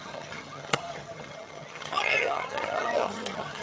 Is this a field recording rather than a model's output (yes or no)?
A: no